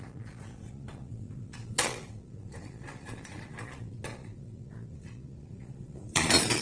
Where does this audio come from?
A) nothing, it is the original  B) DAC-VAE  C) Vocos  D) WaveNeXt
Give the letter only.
C